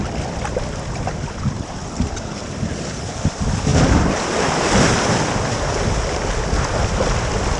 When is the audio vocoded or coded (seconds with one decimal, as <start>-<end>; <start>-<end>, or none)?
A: 0.0-7.6